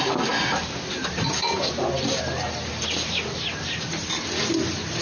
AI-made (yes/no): no